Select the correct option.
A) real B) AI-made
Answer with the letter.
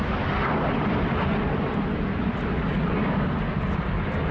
A